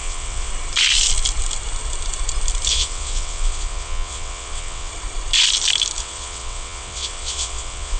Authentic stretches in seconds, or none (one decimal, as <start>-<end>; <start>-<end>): 0.5-2.7; 4.9-6.0